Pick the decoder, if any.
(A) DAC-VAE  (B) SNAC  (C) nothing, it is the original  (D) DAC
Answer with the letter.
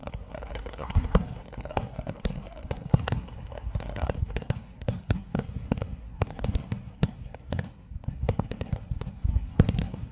B